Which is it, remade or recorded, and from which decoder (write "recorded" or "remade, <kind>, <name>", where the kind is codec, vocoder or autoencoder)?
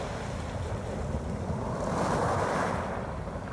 recorded